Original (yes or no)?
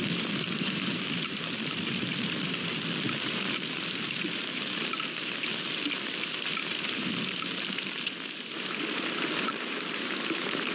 no